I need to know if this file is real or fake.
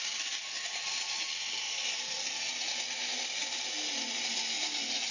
real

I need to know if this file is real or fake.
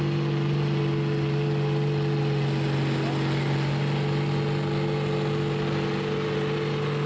real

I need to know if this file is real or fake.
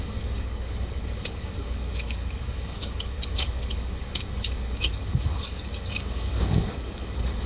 fake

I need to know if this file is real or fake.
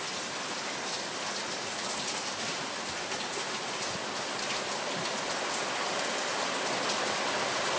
real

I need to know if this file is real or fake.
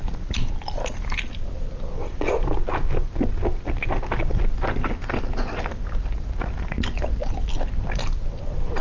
real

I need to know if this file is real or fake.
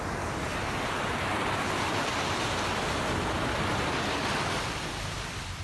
real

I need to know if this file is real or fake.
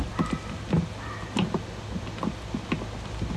real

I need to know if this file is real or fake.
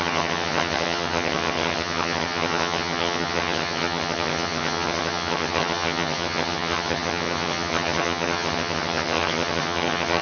fake